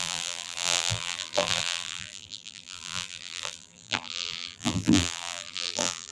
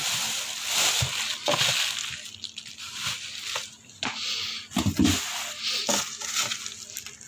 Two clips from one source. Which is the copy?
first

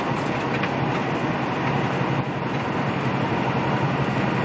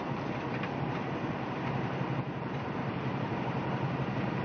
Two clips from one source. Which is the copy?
second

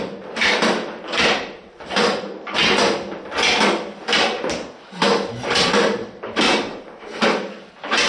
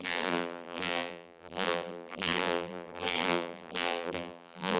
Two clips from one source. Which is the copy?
second